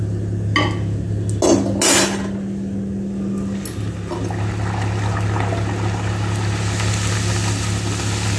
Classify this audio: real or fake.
real